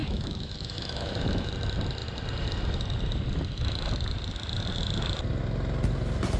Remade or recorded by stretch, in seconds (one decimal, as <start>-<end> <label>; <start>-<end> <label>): 0.0-1.5 remade; 1.5-6.4 recorded